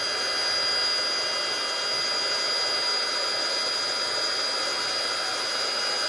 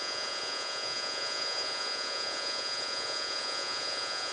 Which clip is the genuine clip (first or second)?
first